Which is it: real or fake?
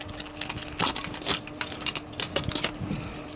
real